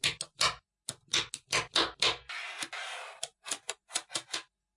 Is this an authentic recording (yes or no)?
yes